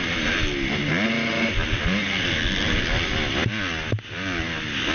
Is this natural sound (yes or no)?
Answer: yes